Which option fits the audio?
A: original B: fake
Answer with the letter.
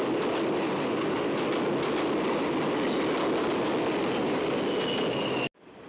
A